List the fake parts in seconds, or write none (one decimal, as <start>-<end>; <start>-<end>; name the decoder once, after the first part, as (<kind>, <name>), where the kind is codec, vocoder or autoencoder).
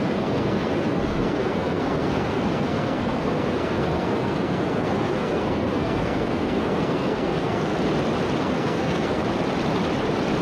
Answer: 0.0-7.7 (codec, SNAC); 8.4-9.2